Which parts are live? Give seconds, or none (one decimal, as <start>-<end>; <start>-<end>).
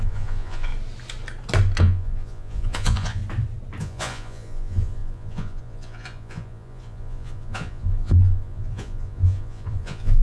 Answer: 0.7-1.8; 3.2-3.8